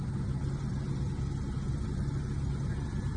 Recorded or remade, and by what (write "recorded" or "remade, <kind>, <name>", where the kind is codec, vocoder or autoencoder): recorded